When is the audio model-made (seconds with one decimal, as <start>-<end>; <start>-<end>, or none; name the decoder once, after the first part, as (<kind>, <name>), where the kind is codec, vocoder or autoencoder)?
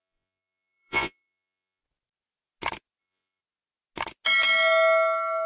0.0-1.8 (vocoder, Vocos); 3.0-3.4